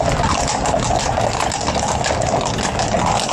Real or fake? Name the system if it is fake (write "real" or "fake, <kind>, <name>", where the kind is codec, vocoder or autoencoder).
real